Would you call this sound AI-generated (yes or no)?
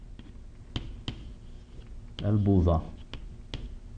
no